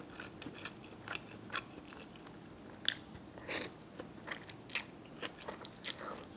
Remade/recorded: recorded